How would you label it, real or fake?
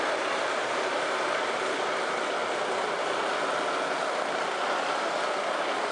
real